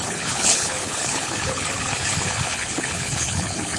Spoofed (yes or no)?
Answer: yes